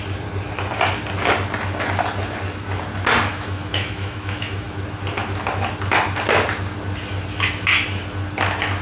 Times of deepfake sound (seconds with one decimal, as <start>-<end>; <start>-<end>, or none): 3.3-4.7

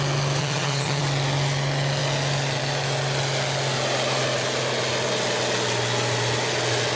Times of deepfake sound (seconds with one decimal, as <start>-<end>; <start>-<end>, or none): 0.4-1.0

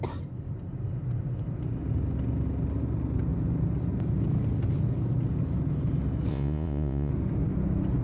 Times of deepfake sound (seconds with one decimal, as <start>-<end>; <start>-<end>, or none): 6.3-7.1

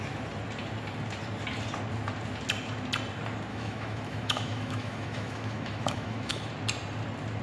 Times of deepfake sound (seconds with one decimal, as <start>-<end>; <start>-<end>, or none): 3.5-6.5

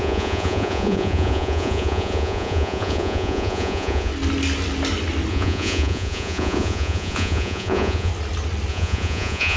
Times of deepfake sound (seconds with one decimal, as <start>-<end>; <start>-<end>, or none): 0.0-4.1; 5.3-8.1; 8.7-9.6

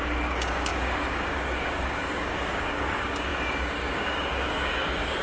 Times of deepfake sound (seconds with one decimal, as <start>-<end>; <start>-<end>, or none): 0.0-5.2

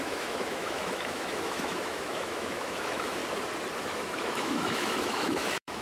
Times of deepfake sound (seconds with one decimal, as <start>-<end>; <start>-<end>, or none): 0.0-3.2; 3.8-5.8